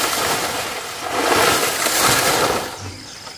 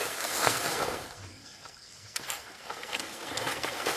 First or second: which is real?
first